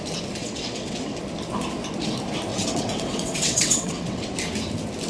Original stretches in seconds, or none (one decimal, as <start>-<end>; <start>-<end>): 0.0-0.4; 1.2-2.5; 4.3-5.1